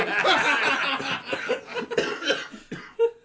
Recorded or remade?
recorded